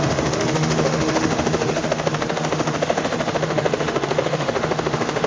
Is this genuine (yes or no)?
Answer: no